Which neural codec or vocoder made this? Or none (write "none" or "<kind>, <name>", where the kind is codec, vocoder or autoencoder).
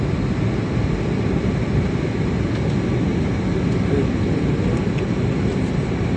none